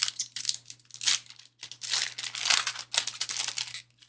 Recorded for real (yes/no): yes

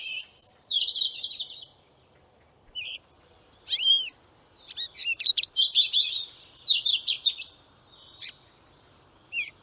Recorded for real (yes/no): no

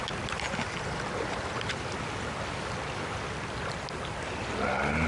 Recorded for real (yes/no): yes